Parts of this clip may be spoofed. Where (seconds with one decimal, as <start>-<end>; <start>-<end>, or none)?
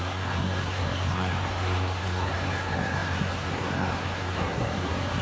0.0-5.2